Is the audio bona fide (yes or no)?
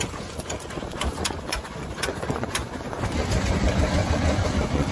no